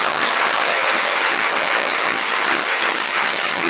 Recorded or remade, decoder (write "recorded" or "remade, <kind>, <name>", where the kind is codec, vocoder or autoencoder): remade, vocoder, HiFi-GAN